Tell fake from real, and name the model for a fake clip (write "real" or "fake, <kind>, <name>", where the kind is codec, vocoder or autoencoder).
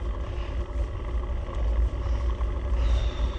real